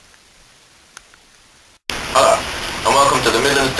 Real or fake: real